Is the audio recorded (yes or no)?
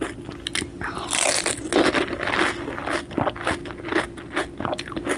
yes